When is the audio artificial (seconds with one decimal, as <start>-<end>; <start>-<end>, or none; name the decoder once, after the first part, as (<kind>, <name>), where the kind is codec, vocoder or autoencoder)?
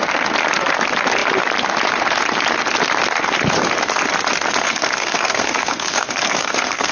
4.6-6.9 (codec, SNAC)